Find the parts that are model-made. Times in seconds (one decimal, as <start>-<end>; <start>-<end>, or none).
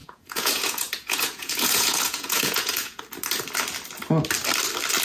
0.0-3.0